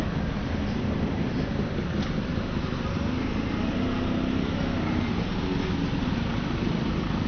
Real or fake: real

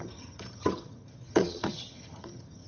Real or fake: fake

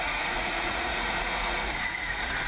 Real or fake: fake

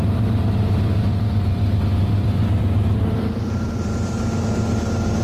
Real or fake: fake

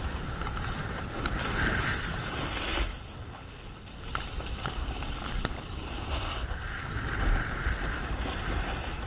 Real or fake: real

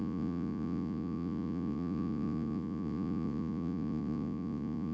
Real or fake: fake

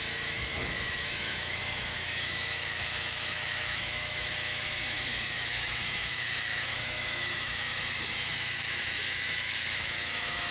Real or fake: fake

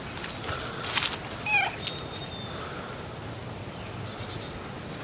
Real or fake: real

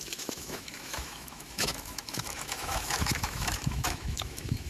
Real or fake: fake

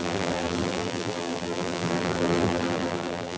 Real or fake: fake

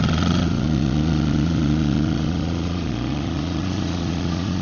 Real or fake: fake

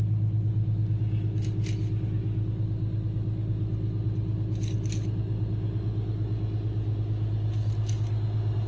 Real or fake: real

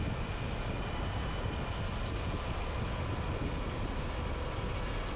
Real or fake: real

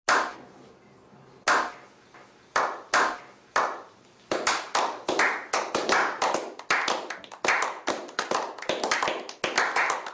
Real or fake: real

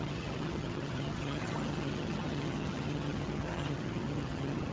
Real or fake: fake